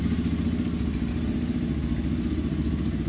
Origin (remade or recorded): recorded